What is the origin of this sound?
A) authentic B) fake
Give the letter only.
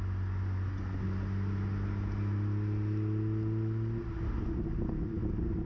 A